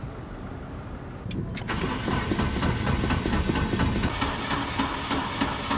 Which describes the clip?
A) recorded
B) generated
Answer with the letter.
A